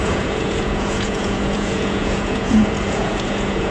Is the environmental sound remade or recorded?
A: remade